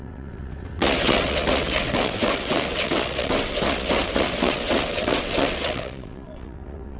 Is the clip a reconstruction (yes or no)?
yes